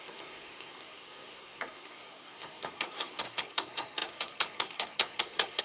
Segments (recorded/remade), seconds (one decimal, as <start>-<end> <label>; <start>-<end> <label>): 0.0-5.6 remade